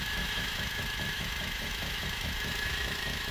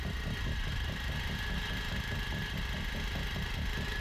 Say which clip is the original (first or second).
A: second